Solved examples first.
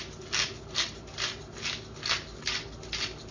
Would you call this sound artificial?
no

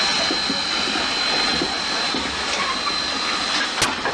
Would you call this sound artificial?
no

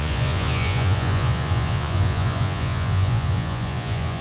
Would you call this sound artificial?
yes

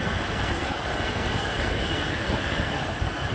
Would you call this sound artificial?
yes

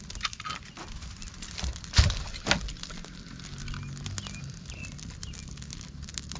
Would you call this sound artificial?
no